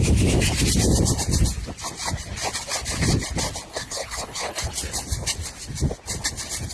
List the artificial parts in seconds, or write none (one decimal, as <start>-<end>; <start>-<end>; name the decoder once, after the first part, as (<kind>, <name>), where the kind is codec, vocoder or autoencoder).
3.7-4.7 (codec, HILCodec)